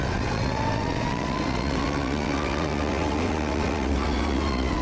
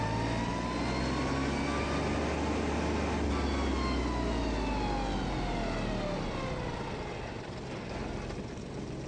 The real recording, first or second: second